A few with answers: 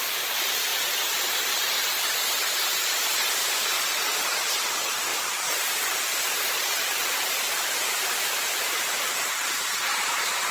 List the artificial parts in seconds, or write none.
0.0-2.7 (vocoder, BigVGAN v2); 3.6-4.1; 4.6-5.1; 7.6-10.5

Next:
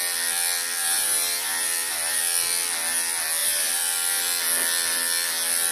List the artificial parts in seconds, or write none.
0.8-2.2 (vocoder, BigVGAN v2); 3.4-4.2